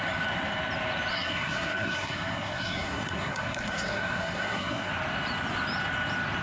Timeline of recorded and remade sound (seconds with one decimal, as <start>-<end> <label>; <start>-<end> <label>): 0.0-1.1 recorded; 1.1-4.9 remade; 4.9-6.4 recorded